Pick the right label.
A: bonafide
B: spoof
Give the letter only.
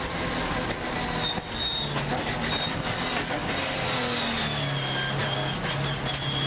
A